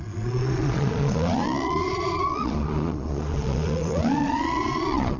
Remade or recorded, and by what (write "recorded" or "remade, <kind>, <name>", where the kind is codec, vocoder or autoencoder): remade, vocoder, Vocos